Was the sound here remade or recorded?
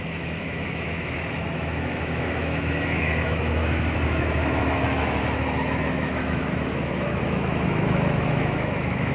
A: remade